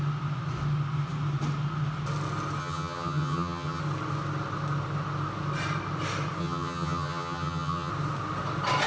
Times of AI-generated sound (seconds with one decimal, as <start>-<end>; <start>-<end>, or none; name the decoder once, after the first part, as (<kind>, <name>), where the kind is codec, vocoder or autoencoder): 2.6-3.8 (vocoder, HiFi-GAN); 6.4-7.9